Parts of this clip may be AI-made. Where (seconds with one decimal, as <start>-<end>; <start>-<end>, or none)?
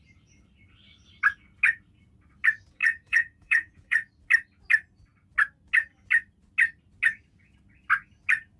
2.8-4.1